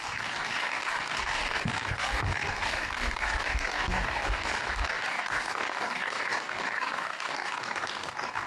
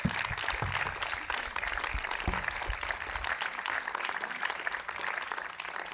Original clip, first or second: second